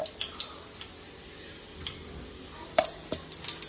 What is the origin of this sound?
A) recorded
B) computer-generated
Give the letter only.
A